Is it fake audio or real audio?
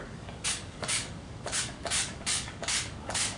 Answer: fake